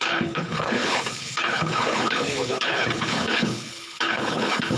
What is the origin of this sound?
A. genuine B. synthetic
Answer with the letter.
B